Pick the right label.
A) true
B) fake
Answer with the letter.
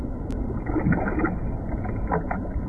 A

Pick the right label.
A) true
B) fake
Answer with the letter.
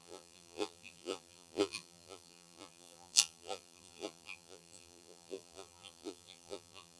B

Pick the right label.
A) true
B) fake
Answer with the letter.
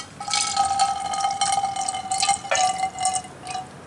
A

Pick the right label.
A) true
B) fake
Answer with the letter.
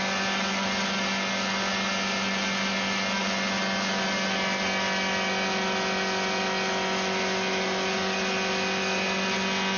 A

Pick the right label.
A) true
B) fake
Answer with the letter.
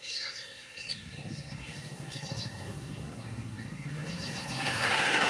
B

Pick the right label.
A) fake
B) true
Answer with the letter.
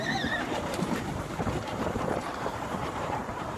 A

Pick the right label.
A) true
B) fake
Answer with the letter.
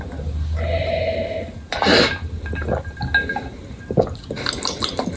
A